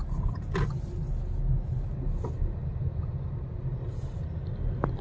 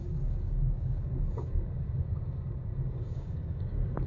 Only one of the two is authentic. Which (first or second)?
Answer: first